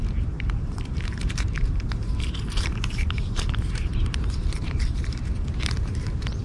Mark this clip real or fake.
fake